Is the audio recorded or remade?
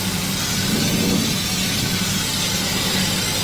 recorded